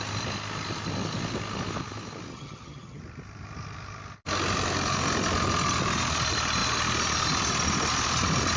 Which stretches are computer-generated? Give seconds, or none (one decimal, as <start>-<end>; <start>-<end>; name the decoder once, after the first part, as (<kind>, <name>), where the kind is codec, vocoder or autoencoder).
2.3-3.0 (vocoder, HiFi-GAN)